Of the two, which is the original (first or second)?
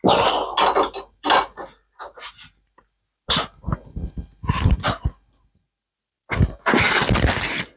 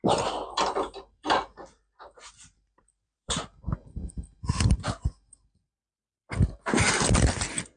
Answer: first